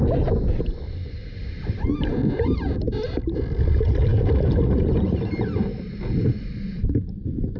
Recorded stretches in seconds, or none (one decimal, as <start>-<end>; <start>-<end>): 0.0-7.6